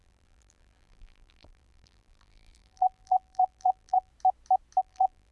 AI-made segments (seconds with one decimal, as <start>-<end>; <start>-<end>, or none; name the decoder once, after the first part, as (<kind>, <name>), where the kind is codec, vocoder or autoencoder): 0.0-4.1 (vocoder, BigVGAN v2); 4.8-5.3